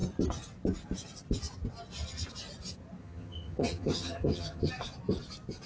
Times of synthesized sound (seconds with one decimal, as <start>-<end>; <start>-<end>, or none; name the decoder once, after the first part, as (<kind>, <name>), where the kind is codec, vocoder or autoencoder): 3.0-4.7 (vocoder, HiFi-GAN)